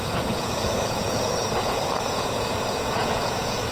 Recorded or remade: remade